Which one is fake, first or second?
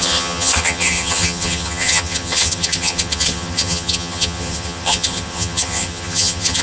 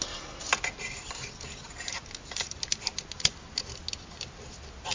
first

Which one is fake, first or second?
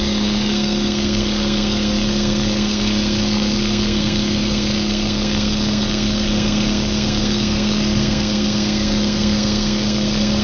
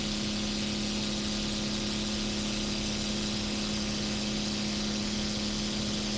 first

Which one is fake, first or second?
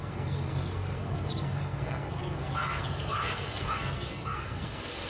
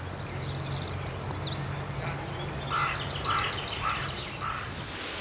first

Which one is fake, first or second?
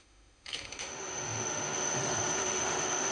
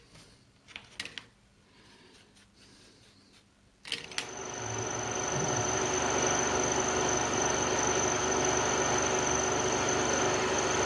first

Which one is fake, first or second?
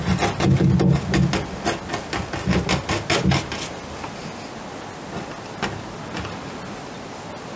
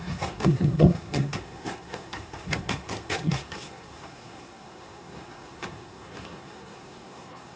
second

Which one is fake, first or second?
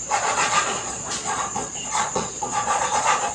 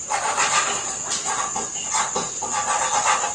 first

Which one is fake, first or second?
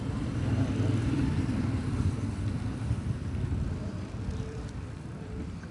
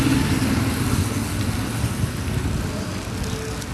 first